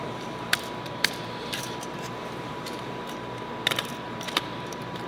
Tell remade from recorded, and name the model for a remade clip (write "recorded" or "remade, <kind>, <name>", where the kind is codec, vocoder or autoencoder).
remade, vocoder, BigVGAN v2